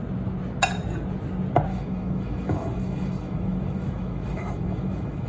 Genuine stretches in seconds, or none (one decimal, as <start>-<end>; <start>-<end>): 0.0-1.7